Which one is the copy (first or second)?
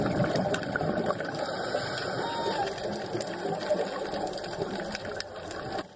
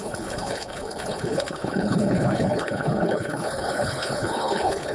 second